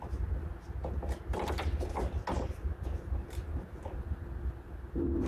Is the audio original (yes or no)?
yes